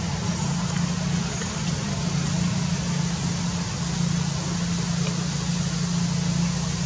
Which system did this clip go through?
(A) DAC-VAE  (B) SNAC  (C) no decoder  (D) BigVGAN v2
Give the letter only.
C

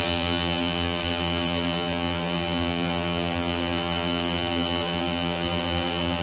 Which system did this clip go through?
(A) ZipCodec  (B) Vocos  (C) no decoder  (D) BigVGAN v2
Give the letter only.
D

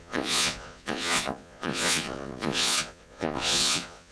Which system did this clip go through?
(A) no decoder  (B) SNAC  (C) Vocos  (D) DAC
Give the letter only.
C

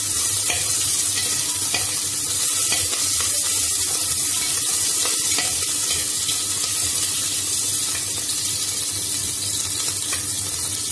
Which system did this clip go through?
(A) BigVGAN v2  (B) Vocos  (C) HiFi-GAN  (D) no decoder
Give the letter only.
D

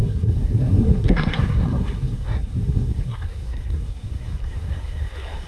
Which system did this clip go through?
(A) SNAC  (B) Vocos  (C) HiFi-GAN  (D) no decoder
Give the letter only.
A